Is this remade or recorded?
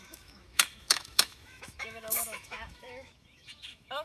remade